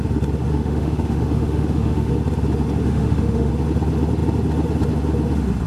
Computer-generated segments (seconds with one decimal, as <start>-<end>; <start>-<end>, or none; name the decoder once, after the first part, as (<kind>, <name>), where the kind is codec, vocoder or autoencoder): 0.5-2.1 (autoencoder, DAC-VAE); 2.8-3.5